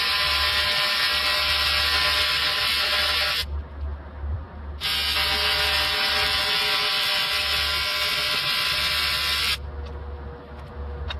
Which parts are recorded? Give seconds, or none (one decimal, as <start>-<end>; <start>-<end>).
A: 0.0-11.2